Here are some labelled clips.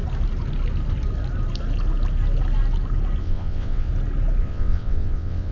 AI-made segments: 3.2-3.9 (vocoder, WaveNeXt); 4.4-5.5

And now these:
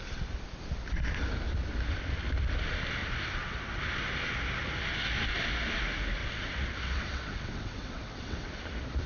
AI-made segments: 3.0-3.8 (vocoder, WaveNeXt); 6.2-8.5

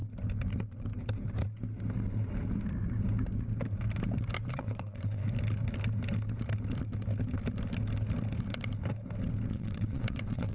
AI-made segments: 4.5-5.2 (vocoder, WaveNeXt); 9.5-10.5

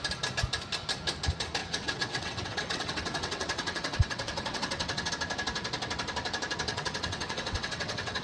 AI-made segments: 1.6-5.1 (vocoder, WaveNeXt); 6.7-8.2

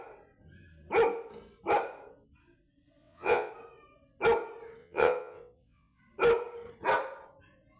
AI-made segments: 3.0-3.5 (vocoder, WaveNeXt); 4.8-6.0

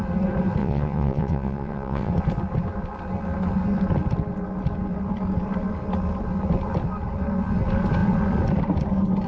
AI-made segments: 0.6-2.1 (vocoder, WaveNeXt)

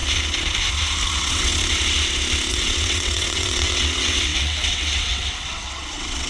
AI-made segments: 1.1-1.5 (vocoder, WaveNeXt); 2.5-6.3